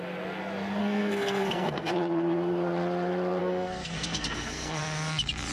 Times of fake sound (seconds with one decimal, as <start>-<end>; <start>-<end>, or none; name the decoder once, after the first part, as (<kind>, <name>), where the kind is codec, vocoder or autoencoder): 0.8-1.9 (codec, SNAC); 3.4-4.8